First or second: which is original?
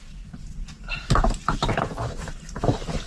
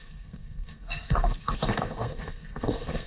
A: first